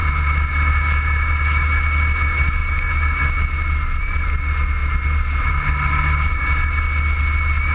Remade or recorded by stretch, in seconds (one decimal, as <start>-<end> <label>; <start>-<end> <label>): 0.0-7.7 recorded